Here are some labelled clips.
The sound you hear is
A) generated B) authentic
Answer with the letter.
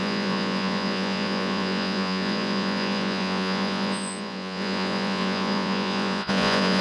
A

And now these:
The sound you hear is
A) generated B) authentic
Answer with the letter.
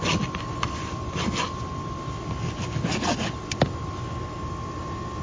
B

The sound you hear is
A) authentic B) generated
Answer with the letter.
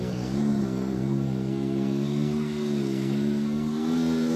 B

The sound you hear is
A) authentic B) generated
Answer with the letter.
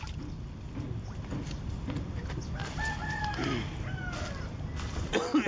A